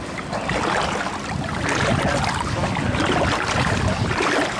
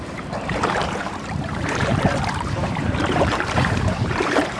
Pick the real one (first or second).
first